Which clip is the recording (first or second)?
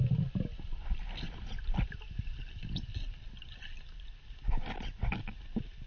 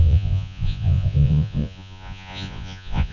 first